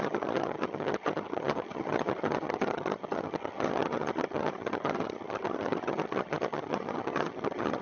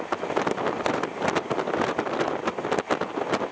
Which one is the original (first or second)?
second